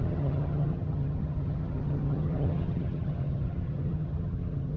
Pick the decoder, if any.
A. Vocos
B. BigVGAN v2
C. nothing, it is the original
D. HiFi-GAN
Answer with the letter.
D